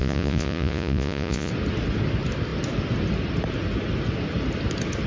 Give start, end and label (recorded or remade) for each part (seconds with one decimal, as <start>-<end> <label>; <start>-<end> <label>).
0.0-1.5 remade; 1.5-5.1 recorded

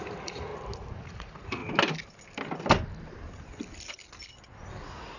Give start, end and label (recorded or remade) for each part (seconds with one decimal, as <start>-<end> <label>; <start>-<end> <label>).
0.0-0.5 remade; 0.5-1.0 recorded; 1.0-1.6 remade; 1.6-4.7 recorded; 4.7-5.2 remade

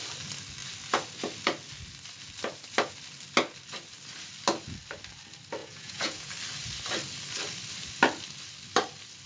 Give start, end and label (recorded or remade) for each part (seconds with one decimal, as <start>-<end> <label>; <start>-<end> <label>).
0.0-5.6 recorded; 5.6-6.3 remade; 6.3-9.3 recorded

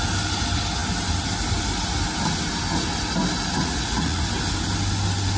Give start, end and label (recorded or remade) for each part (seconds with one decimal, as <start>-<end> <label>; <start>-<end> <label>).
0.0-3.6 recorded; 3.6-4.2 remade; 4.2-5.4 recorded

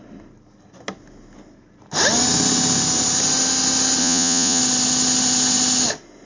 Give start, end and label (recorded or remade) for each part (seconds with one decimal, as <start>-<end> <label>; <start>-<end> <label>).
0.0-4.0 recorded; 4.0-4.6 remade; 4.6-6.3 recorded